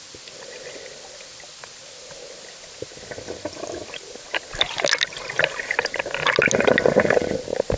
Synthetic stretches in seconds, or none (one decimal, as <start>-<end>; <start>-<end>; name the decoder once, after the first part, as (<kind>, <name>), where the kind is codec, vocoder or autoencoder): none

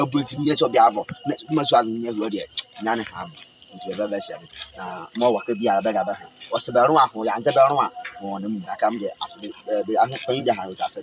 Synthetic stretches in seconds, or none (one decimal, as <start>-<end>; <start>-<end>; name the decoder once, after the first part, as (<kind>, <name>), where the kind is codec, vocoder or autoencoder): 0.0-1.5 (vocoder, BigVGAN v2); 2.3-11.0